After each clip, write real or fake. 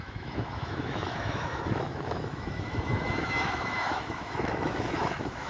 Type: fake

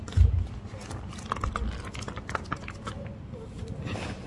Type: real